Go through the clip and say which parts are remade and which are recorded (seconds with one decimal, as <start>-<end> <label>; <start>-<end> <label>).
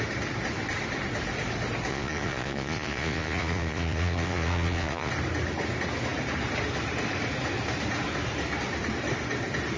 0.0-1.9 recorded; 1.9-5.1 remade; 5.1-9.8 recorded